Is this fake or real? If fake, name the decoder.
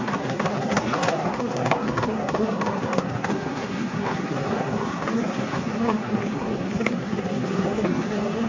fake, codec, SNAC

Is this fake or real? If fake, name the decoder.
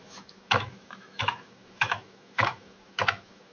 fake, autoencoder, DAC-VAE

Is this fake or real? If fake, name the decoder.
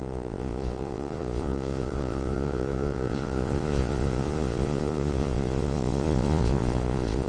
fake, vocoder, Vocos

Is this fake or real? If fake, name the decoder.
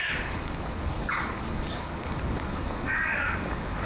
fake, codec, DAC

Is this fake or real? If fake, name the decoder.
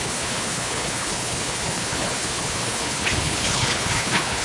fake, codec, HILCodec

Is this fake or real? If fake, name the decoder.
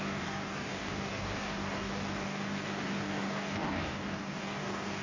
fake, codec, DAC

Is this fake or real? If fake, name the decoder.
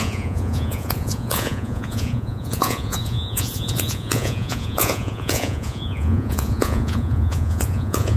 fake, vocoder, Vocos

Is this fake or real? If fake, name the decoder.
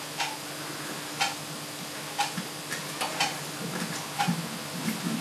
real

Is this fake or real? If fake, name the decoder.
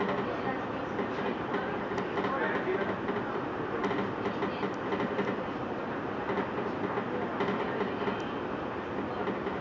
real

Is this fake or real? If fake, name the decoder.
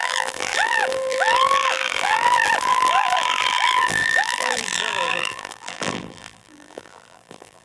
fake, vocoder, BigVGAN v2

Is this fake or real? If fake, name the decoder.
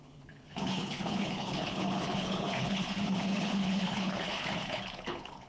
fake, codec, HILCodec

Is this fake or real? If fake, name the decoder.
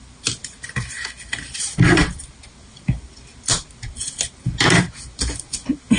real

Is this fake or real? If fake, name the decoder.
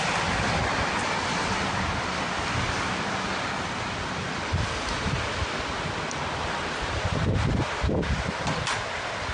real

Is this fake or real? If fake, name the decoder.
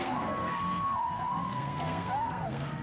fake, codec, SNAC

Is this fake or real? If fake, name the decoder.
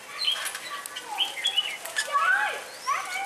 real